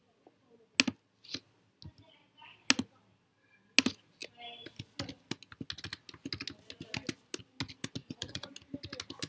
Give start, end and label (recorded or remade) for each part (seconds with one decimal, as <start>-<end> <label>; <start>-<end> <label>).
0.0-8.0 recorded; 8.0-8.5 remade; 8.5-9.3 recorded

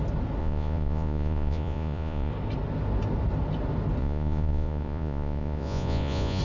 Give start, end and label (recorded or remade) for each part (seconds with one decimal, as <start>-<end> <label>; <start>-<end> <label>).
0.0-0.4 recorded; 0.4-2.3 remade; 2.3-4.0 recorded; 4.0-6.4 remade

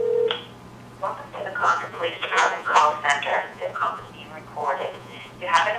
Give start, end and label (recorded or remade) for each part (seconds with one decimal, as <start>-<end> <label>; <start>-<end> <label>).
0.0-1.6 recorded; 1.6-2.8 remade; 2.8-3.3 recorded; 3.3-4.1 remade; 4.1-4.6 recorded; 4.6-5.3 remade; 5.3-5.8 recorded